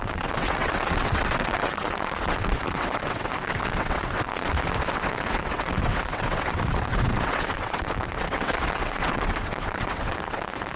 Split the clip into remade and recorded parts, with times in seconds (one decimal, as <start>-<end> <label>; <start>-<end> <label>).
0.0-10.8 remade